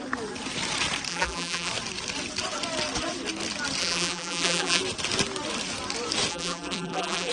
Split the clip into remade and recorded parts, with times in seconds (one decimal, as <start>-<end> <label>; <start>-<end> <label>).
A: 0.0-1.1 recorded; 1.1-1.7 remade; 1.7-3.8 recorded; 3.8-4.8 remade; 4.8-6.3 recorded; 6.3-7.3 remade